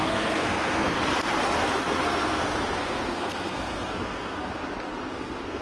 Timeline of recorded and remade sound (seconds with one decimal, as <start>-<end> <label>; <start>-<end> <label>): 0.0-1.1 remade; 1.1-1.7 recorded; 1.7-4.6 remade; 4.6-5.1 recorded; 5.1-5.6 remade